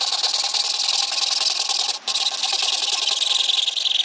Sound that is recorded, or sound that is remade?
recorded